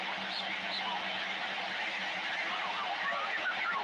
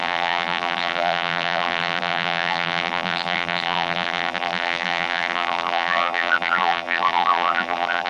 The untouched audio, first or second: first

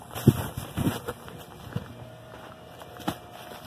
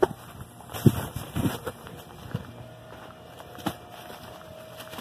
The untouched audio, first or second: first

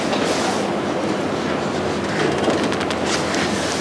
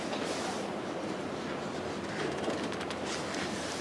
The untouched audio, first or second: first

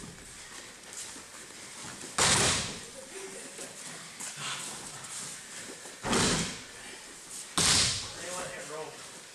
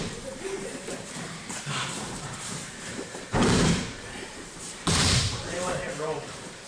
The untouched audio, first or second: first